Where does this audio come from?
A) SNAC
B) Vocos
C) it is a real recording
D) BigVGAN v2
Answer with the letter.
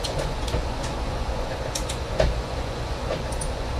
B